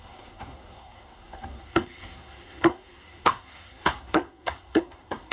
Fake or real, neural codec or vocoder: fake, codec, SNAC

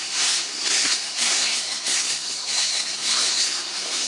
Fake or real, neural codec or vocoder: fake, codec, SNAC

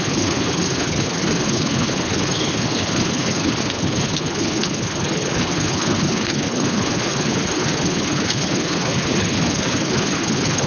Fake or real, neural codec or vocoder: fake, codec, HILCodec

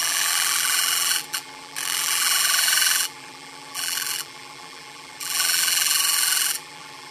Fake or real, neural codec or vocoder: fake, vocoder, BigVGAN v2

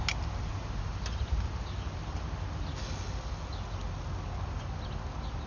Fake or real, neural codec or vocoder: real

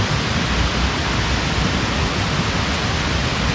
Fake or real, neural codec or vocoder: real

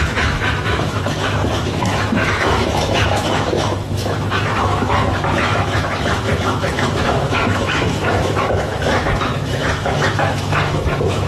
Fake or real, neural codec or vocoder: fake, autoencoder, DAC-VAE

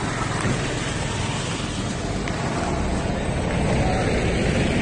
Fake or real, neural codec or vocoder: real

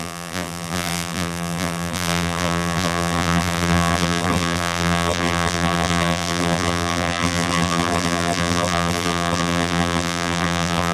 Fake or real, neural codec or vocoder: fake, vocoder, BigVGAN v2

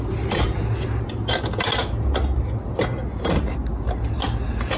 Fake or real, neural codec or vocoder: real